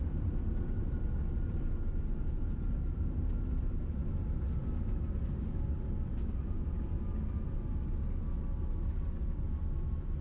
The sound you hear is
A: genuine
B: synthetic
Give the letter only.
A